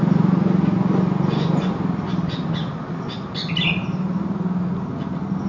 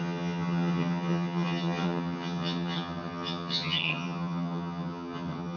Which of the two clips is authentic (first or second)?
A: first